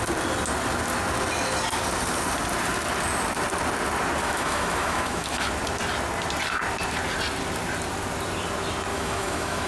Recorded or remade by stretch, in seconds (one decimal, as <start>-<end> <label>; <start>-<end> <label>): 0.0-4.2 recorded; 4.2-5.5 remade; 5.5-8.9 recorded; 8.9-9.7 remade